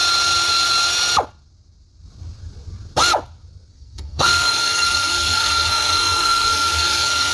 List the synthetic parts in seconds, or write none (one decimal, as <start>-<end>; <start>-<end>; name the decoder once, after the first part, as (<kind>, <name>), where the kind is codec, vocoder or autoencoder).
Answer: 3.7-7.3 (codec, SNAC)